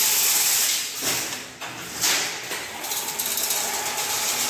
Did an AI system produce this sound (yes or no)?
no